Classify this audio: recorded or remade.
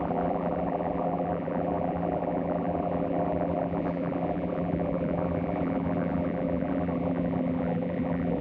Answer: remade